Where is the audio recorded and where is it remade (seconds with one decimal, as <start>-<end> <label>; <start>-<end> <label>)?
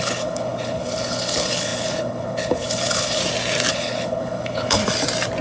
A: 0.0-3.2 remade; 3.2-3.7 recorded; 3.7-4.8 remade; 4.8-5.4 recorded